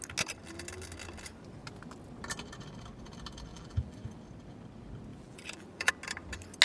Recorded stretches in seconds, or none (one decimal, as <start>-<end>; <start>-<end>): 0.0-3.5; 4.2-5.1; 5.9-6.6